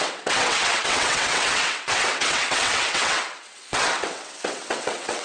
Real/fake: fake